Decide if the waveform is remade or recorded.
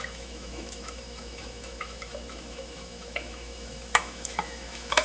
remade